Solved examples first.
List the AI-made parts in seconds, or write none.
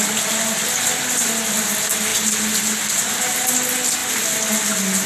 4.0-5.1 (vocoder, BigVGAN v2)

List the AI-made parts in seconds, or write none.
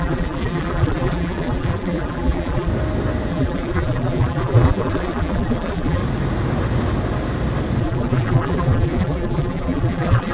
0.0-2.7 (vocoder, BigVGAN v2); 3.3-6.0; 7.8-10.3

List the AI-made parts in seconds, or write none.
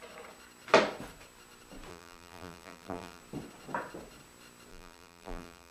1.9-3.2 (vocoder, BigVGAN v2); 4.7-5.7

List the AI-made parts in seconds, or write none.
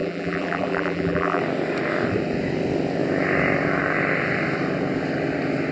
0.0-1.4 (vocoder, BigVGAN v2)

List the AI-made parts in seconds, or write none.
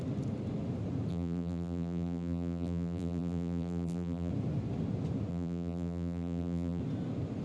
1.1-4.3 (vocoder, BigVGAN v2); 5.3-6.8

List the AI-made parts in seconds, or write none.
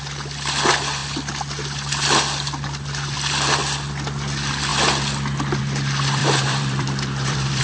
6.2-7.6 (vocoder, BigVGAN v2)